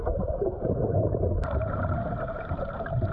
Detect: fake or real fake